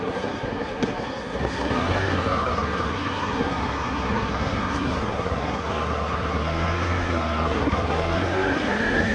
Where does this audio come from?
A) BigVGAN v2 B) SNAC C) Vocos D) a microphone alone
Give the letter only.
B